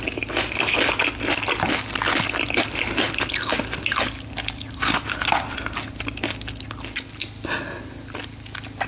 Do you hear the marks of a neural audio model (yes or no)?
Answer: no